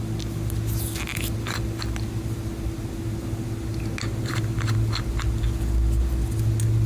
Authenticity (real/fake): real